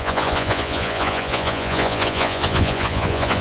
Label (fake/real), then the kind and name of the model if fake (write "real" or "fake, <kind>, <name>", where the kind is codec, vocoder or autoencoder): fake, vocoder, Vocos